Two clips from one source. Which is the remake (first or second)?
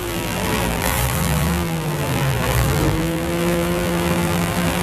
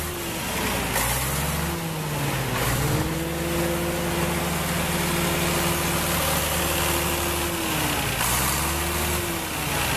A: first